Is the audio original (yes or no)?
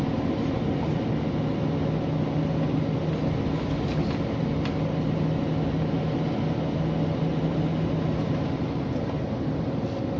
yes